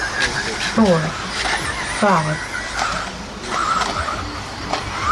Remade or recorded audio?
recorded